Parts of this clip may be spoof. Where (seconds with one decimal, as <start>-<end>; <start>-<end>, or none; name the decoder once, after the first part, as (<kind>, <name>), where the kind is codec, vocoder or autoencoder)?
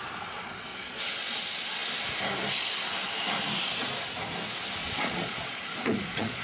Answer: 0.7-1.4 (vocoder, Vocos); 4.8-6.4